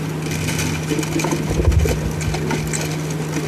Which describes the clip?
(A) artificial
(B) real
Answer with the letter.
B